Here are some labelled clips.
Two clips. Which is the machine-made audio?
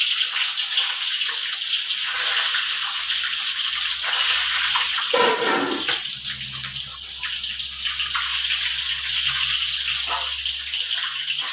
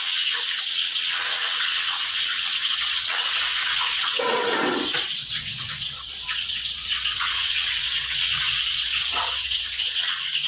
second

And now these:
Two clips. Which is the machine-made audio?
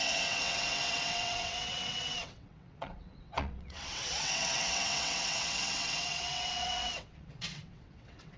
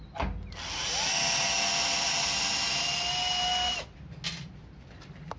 first